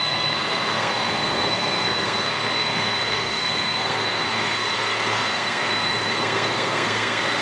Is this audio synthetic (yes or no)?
yes